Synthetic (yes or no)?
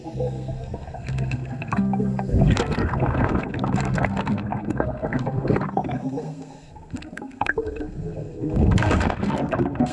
yes